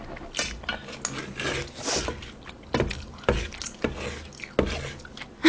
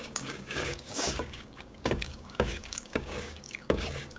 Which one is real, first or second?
first